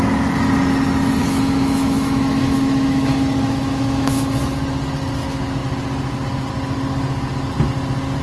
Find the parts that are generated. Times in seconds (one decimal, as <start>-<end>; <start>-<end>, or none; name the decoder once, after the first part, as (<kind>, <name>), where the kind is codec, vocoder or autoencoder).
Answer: 1.2-4.4 (autoencoder, DAC-VAE)